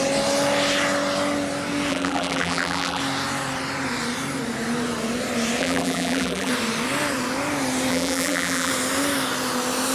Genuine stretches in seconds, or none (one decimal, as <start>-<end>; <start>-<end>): 0.0-1.9; 3.0-5.6; 6.5-7.9; 8.7-9.9